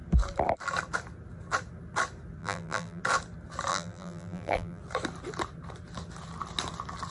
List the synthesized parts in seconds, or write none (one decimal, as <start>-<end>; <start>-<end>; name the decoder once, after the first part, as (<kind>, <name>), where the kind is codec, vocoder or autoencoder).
2.4-3.0 (vocoder, BigVGAN v2); 3.7-4.8